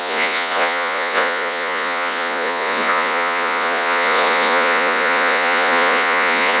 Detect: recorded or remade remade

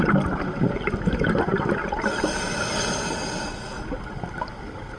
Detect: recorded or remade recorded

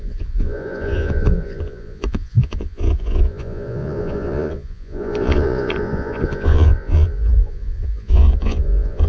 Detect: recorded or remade remade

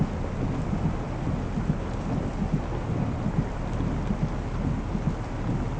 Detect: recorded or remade recorded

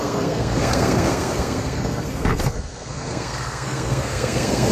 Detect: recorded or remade remade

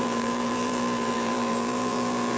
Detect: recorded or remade remade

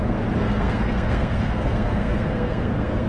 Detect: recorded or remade remade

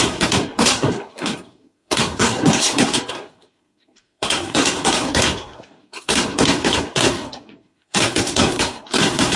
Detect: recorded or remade remade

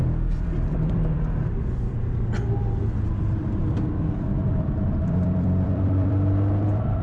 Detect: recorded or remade remade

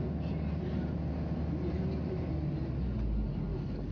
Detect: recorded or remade recorded